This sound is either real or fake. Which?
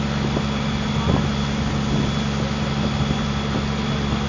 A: real